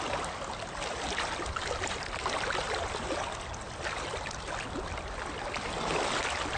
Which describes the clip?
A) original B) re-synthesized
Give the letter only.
A